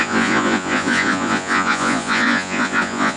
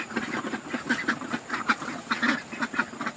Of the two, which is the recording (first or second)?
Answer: second